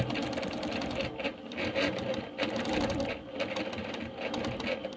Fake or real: real